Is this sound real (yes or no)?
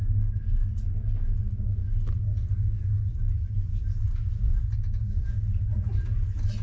yes